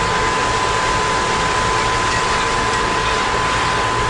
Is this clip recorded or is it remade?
recorded